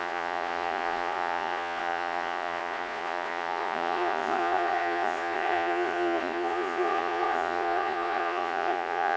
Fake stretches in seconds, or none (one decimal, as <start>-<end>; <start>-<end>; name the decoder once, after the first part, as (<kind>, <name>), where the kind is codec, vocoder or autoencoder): 0.0-9.2 (vocoder, Vocos)